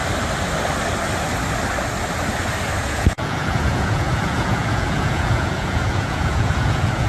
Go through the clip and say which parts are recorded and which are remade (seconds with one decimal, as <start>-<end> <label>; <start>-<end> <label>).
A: 0.0-2.8 recorded; 2.8-7.1 remade